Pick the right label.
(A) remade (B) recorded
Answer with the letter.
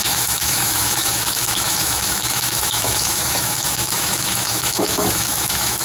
A